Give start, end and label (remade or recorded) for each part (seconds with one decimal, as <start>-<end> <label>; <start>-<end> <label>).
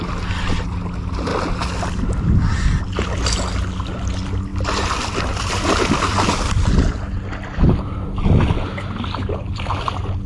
0.0-10.3 recorded